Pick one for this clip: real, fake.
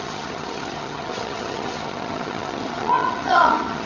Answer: fake